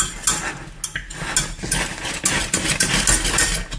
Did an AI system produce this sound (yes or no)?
no